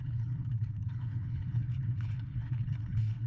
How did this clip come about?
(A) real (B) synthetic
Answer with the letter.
B